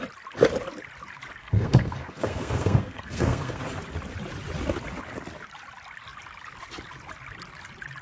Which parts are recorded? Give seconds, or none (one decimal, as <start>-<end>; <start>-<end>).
0.0-1.4; 3.6-8.0